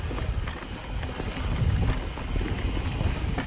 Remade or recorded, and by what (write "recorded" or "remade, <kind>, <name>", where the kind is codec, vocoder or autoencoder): recorded